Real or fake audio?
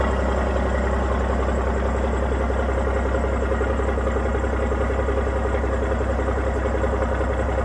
real